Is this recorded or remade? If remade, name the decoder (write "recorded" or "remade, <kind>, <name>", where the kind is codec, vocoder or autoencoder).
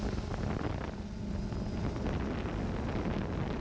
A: recorded